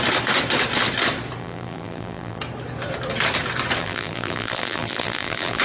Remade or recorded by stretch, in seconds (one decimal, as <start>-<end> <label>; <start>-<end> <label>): 0.0-1.4 recorded; 1.4-2.4 remade; 2.4-3.8 recorded; 3.8-5.6 remade